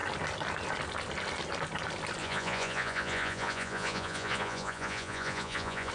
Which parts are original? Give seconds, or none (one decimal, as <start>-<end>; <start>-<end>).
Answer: 0.0-2.2